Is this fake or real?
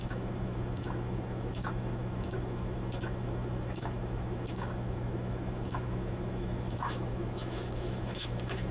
fake